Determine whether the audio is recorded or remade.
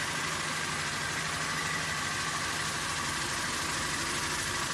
recorded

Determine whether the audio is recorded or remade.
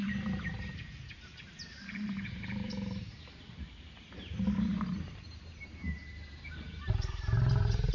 remade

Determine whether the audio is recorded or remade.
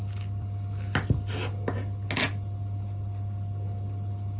recorded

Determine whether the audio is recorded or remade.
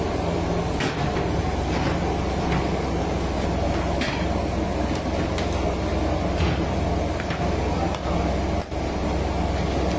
recorded